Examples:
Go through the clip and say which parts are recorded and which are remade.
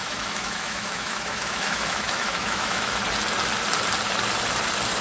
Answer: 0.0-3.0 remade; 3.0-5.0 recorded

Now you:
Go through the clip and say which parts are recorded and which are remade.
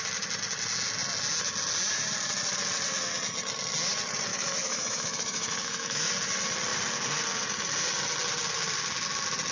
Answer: 0.0-4.3 recorded; 4.3-6.1 remade; 6.1-9.5 recorded